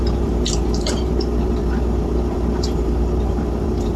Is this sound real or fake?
fake